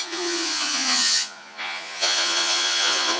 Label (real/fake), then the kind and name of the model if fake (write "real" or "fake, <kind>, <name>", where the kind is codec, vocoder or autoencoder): fake, vocoder, Vocos